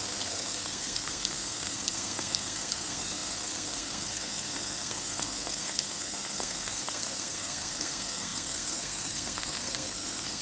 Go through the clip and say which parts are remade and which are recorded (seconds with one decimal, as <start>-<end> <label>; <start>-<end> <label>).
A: 0.0-10.4 remade